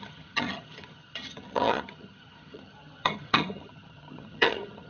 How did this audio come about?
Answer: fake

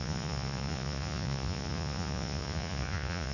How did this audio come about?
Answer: fake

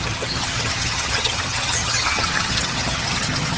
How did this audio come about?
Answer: fake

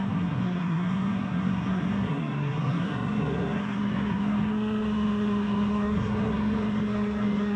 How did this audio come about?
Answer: fake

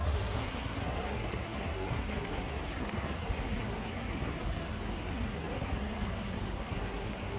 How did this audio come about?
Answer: fake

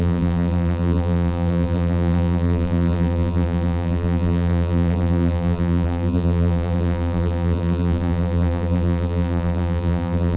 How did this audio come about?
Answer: fake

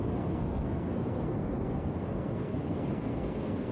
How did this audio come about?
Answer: fake